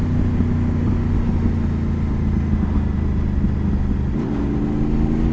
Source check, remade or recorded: recorded